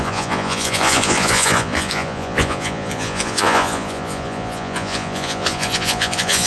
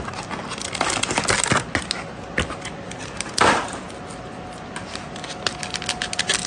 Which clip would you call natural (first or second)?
second